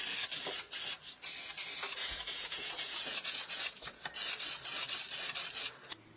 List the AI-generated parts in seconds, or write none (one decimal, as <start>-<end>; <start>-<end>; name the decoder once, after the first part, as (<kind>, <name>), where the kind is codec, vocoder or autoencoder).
2.0-4.0 (vocoder, Vocos)